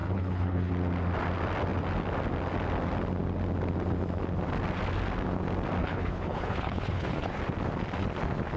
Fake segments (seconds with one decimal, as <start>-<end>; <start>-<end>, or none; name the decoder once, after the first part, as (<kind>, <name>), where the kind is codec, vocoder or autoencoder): 0.0-0.7 (codec, HILCodec); 5.8-7.4